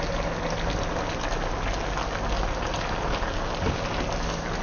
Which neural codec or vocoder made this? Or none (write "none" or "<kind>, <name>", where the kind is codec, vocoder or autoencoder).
none